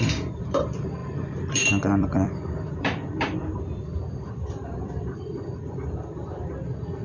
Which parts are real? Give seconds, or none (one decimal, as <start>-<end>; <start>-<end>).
none